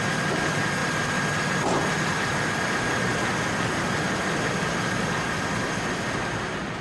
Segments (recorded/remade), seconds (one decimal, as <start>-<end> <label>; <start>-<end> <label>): 0.0-6.8 recorded